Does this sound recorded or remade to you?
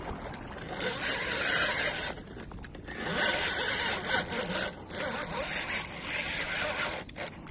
recorded